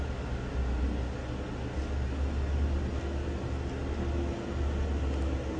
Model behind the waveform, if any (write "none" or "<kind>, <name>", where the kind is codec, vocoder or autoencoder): none